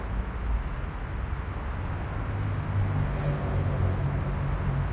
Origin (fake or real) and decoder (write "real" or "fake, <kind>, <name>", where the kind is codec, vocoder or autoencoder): real